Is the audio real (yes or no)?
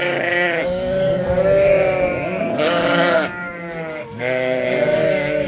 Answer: no